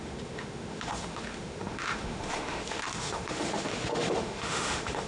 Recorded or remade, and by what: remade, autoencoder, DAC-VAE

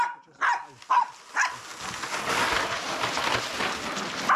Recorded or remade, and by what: recorded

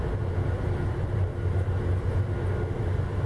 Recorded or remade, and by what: recorded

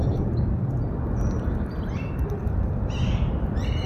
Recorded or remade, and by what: recorded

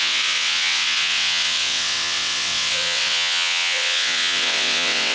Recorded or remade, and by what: remade, vocoder, WaveNeXt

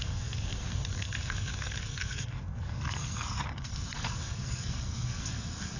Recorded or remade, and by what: remade, codec, SNAC